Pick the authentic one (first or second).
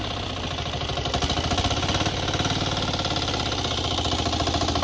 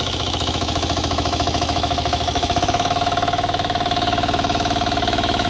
first